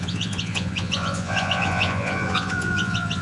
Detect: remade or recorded remade